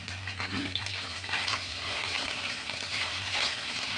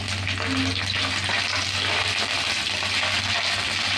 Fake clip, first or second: first